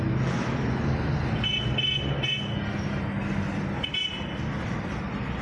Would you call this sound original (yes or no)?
yes